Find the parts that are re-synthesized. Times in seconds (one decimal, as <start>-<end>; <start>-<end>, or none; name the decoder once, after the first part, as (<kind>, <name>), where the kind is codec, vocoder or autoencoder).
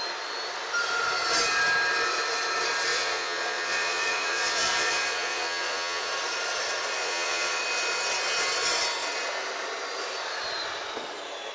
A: 2.9-6.1 (vocoder, Vocos); 7.0-7.6